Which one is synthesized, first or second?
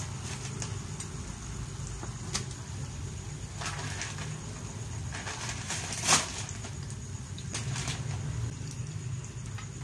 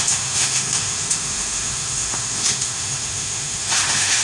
second